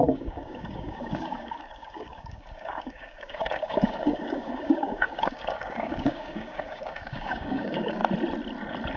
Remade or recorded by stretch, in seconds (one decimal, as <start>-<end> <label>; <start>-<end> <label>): 0.0-8.0 remade; 8.0-9.0 recorded